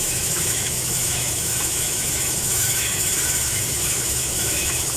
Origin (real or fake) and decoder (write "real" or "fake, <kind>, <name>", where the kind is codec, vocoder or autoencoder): fake, autoencoder, DAC-VAE